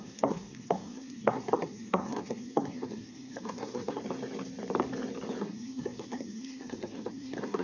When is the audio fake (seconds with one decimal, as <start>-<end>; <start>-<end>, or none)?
0.0-4.0; 5.4-7.6